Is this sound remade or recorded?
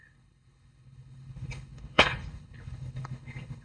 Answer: remade